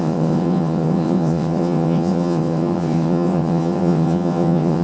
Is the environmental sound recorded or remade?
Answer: remade